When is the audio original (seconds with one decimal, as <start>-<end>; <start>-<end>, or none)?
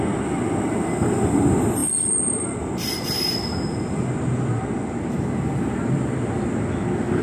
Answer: 0.0-7.2